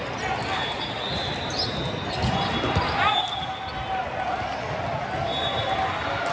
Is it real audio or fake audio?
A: real